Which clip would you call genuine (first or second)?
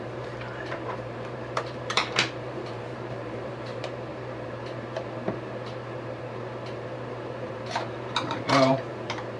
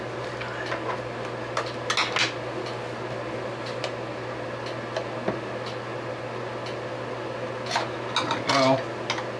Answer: second